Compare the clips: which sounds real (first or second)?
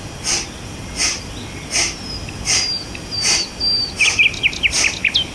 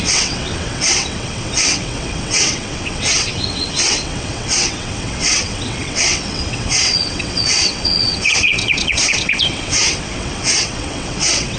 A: first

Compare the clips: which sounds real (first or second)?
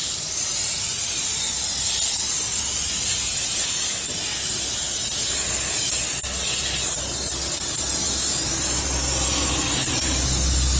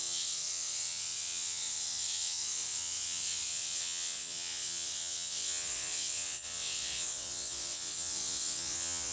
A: first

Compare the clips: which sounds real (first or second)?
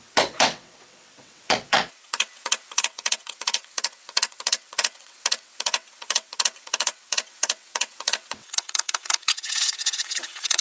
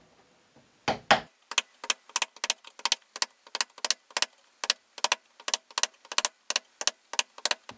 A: second